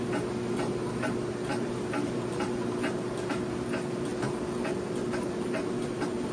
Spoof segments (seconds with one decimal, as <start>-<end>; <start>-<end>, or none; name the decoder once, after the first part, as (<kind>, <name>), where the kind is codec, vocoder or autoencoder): none